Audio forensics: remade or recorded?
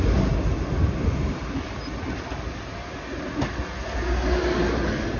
recorded